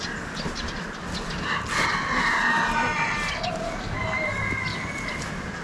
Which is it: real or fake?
real